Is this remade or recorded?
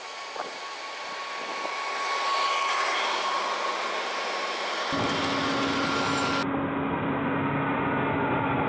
recorded